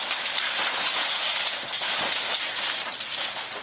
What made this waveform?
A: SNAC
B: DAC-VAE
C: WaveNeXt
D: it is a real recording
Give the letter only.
D